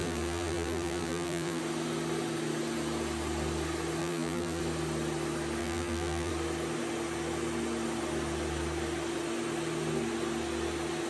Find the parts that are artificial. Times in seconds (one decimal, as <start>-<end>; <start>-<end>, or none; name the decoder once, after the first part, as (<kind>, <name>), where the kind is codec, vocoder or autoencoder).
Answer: 0.0-1.6 (vocoder, BigVGAN v2); 4.0-4.6; 5.6-6.3